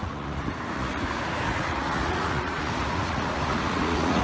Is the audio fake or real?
fake